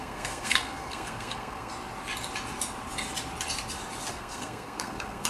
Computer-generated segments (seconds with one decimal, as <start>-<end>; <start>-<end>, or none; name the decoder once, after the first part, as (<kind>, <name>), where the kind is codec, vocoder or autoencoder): 0.0-1.7 (codec, SNAC); 4.1-5.3